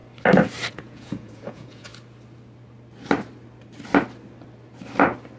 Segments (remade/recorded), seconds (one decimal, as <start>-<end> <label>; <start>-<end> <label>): 0.0-0.7 recorded; 0.7-1.9 remade; 1.9-5.4 recorded